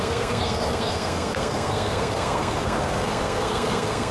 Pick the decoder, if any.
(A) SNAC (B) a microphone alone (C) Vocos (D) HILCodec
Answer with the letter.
A